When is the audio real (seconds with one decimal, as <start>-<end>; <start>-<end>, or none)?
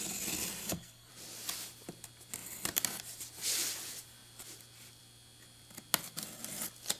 0.0-0.6; 1.1-7.0